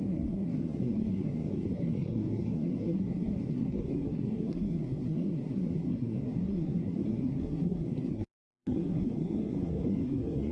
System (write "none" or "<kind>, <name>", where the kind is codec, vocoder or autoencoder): codec, SNAC